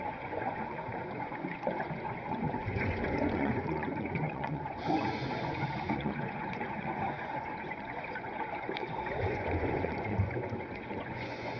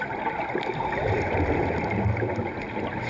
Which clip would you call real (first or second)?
second